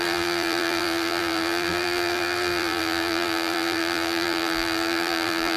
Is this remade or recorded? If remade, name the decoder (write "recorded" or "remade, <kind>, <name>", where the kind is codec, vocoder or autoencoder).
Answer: remade, vocoder, BigVGAN v2